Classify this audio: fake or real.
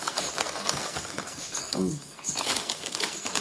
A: fake